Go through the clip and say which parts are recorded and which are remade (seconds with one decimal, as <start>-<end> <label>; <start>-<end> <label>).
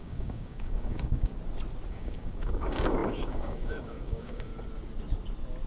0.0-1.3 remade; 1.3-1.9 recorded; 1.9-4.5 remade; 4.5-5.7 recorded